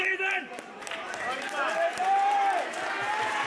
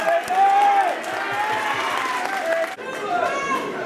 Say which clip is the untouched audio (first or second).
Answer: second